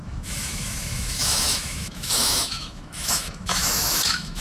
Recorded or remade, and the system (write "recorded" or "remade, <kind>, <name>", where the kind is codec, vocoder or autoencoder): remade, autoencoder, DAC-VAE